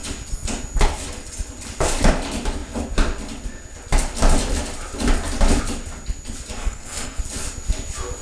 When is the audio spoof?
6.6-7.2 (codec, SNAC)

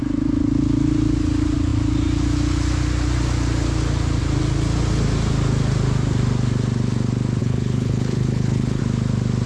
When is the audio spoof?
7.4-8.8 (codec, HILCodec)

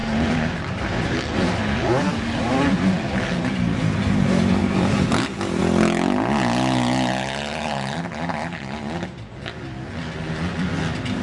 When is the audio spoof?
0.0-1.2 (vocoder, BigVGAN v2); 4.6-5.6